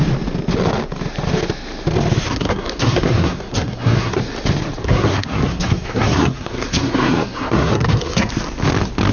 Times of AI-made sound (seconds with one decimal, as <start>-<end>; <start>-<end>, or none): 2.3-4.2; 4.8-8.3